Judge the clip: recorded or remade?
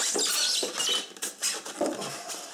recorded